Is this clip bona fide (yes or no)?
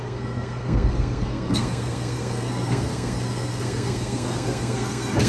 no